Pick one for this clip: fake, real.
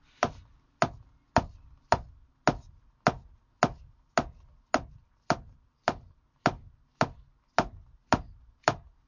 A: real